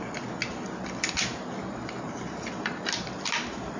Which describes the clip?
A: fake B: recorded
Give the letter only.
B